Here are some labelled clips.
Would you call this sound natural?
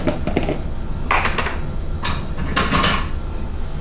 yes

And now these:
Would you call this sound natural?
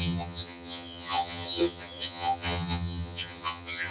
no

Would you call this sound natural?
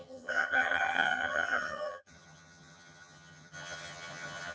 no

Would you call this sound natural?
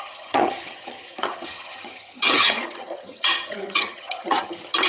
no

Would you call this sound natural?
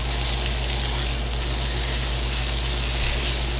yes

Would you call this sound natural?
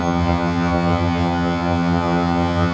no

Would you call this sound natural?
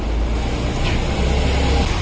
yes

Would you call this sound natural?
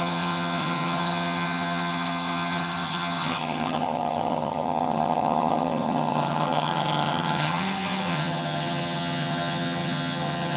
no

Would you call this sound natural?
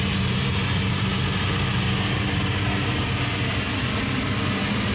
yes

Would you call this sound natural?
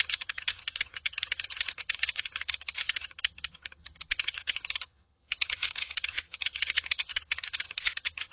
no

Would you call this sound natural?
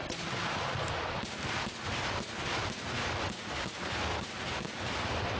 yes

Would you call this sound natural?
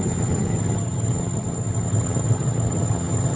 no